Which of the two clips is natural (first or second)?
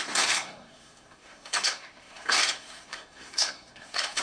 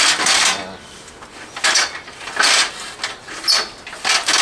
second